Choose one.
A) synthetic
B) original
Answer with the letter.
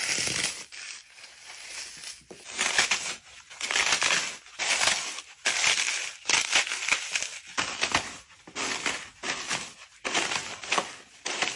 B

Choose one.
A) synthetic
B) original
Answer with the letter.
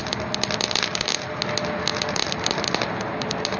B